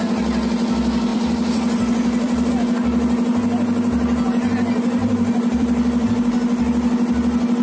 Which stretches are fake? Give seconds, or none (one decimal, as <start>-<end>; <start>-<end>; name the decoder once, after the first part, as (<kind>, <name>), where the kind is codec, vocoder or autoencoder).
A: 1.1-2.5 (vocoder, BigVGAN v2); 5.0-6.1